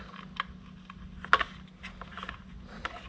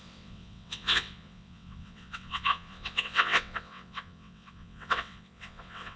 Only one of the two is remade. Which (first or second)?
second